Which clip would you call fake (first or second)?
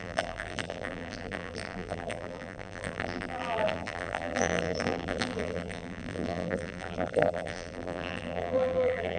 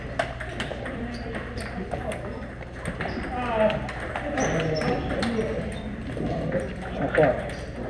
first